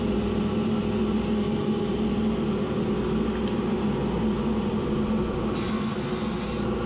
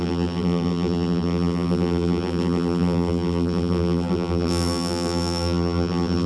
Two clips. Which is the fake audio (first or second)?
second